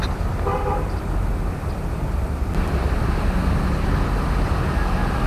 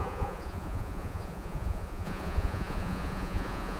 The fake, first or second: second